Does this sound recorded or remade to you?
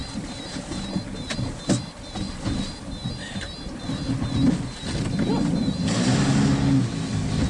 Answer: recorded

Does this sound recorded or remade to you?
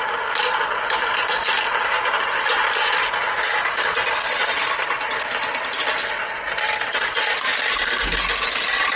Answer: recorded